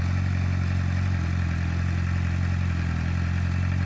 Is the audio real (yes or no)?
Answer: yes